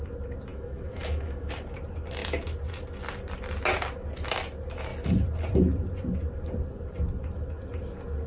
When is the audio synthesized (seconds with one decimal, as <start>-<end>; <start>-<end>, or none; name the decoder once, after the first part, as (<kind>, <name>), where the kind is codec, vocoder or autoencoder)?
0.5-1.5 (autoencoder, DAC-VAE)

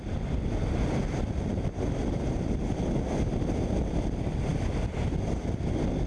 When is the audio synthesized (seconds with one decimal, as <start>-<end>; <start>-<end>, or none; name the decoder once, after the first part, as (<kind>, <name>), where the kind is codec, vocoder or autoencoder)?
none

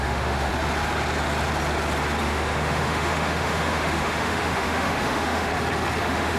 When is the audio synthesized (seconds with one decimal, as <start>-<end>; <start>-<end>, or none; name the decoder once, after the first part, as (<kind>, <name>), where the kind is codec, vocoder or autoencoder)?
0.0-0.5 (autoencoder, DAC-VAE); 2.2-5.5; 6.0-6.4

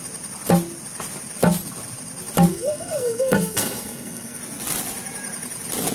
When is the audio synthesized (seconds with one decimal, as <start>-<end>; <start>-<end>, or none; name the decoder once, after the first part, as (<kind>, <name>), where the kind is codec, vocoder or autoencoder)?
2.5-4.4 (codec, SNAC)

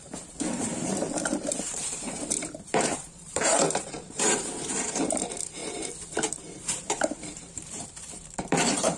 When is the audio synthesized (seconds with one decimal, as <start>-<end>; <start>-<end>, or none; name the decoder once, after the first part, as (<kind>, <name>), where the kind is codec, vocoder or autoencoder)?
0.0-5.6 (vocoder, BigVGAN v2); 6.3-9.0